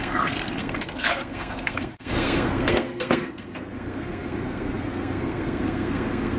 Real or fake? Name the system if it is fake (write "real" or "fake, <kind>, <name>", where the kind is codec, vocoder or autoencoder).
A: fake, codec, SNAC